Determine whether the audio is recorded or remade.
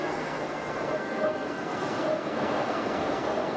remade